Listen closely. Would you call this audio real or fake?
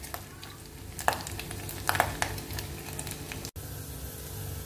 real